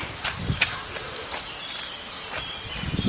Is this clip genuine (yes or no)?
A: yes